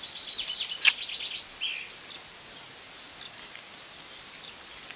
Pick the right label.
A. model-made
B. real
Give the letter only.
B